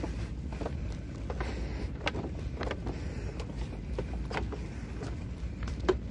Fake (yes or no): no